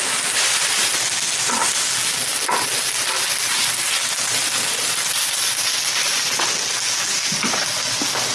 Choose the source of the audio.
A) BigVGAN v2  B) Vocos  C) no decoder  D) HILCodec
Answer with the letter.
C